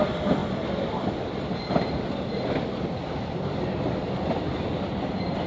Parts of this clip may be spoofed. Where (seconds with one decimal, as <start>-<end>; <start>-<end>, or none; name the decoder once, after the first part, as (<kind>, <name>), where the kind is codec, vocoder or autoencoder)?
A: none